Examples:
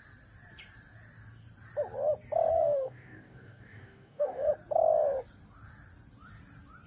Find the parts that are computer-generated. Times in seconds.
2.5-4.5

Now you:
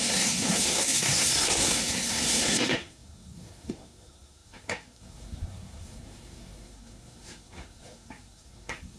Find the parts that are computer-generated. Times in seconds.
0.0-9.0

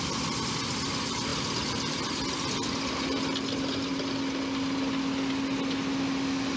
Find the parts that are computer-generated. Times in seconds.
none

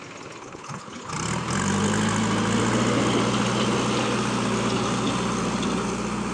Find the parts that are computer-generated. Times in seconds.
0.4-1.1